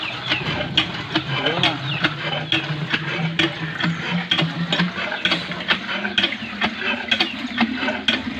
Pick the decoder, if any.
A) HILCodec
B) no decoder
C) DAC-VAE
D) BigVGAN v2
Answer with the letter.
B